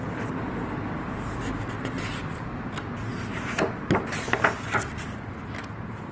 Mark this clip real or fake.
real